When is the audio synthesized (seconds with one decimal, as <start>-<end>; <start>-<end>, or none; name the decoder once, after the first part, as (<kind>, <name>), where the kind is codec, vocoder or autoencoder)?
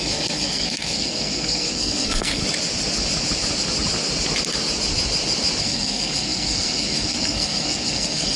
0.0-2.4 (codec, SNAC); 5.6-8.4